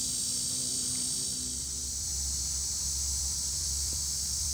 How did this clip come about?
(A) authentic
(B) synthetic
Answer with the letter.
B